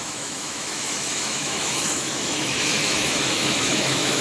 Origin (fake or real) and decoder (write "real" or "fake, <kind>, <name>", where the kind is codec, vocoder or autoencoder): fake, autoencoder, DAC-VAE